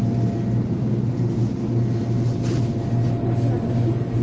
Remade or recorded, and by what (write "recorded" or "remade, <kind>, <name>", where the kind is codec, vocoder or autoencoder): recorded